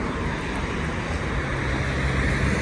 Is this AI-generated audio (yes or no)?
no